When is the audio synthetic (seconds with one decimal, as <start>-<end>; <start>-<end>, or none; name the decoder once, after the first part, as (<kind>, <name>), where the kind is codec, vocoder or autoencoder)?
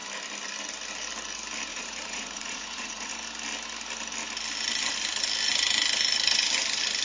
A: 1.7-3.1 (vocoder, Vocos)